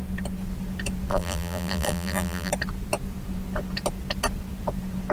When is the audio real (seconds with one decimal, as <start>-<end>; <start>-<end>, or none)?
0.0-1.1; 2.5-5.1